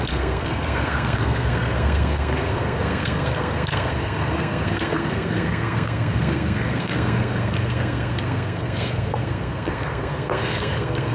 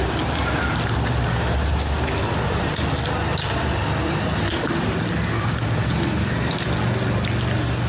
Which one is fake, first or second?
first